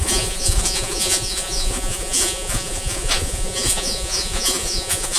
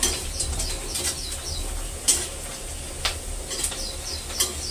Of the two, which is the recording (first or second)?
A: second